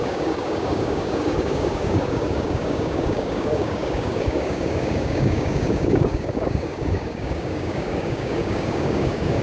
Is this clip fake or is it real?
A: fake